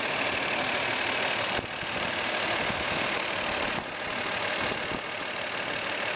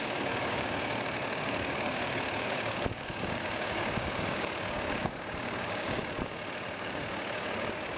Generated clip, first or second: second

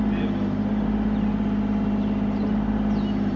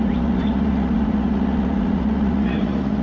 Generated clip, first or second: second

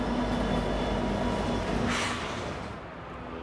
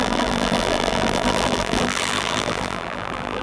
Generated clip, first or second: second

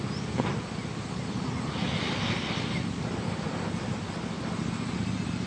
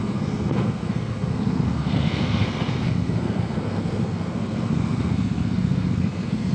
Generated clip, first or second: second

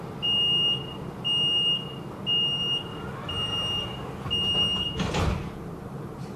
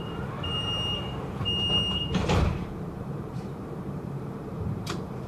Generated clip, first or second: second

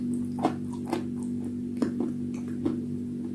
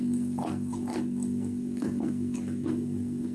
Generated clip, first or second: second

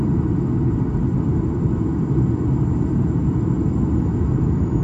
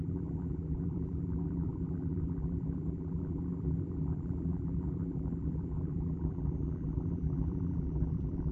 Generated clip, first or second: second